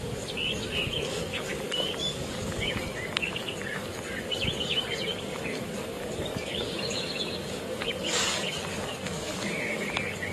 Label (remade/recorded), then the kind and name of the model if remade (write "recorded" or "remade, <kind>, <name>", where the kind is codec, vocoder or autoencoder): remade, codec, DAC